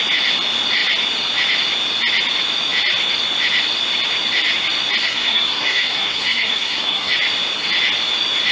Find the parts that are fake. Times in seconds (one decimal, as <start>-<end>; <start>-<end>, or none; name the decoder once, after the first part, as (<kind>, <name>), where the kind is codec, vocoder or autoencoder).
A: 5.0-7.1 (codec, SNAC)

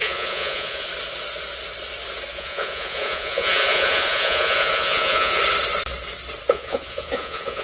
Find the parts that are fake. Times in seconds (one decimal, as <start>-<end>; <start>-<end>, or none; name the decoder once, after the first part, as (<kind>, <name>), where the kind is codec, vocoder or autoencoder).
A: 0.0-0.9 (vocoder, Vocos); 2.3-5.4; 6.5-7.6

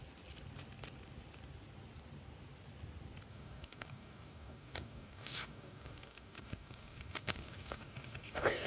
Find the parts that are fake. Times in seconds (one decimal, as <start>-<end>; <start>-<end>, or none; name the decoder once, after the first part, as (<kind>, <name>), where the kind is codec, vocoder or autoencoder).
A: 3.3-8.7 (codec, DAC)

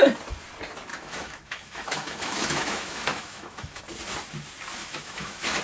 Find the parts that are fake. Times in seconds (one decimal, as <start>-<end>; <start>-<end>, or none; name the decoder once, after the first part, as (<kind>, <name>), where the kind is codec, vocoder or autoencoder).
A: 0.9-3.8 (autoencoder, DAC-VAE); 4.8-5.6

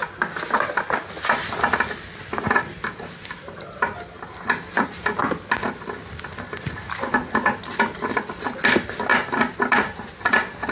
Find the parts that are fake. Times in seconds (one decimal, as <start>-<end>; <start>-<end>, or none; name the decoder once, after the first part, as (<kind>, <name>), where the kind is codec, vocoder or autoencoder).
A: none

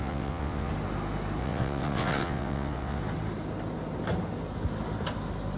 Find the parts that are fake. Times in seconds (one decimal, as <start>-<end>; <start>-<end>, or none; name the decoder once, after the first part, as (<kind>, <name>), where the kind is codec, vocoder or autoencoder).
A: 0.0-0.7 (vocoder, WaveNeXt); 1.4-3.0

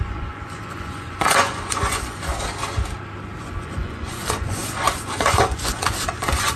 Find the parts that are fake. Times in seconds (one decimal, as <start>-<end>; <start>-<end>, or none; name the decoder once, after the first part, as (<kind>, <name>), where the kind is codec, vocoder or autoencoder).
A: 0.0-2.3 (vocoder, Vocos); 3.4-6.6